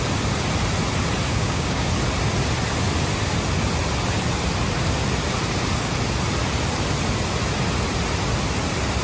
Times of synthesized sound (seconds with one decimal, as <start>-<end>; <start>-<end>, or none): 1.3-1.9